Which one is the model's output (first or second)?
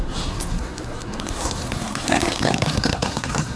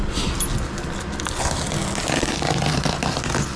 first